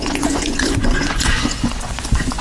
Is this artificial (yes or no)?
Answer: yes